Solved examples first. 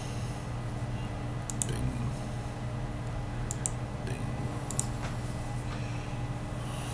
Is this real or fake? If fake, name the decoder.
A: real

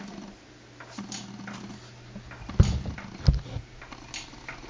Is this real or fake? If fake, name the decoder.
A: real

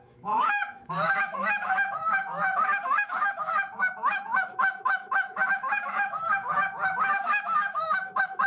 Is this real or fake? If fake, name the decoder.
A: fake, autoencoder, DAC-VAE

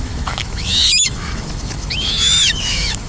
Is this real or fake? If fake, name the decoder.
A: fake, autoencoder, DAC-VAE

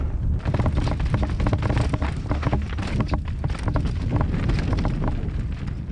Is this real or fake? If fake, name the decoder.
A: real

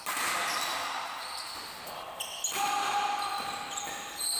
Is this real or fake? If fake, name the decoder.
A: real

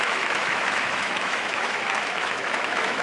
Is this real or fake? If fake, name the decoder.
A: fake, autoencoder, DAC-VAE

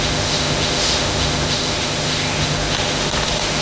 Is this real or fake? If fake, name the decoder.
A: fake, autoencoder, DAC-VAE